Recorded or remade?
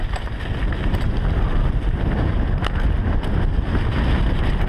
recorded